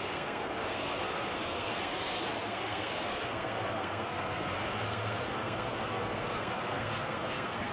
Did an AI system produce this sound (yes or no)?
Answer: yes